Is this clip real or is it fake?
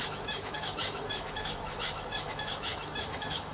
fake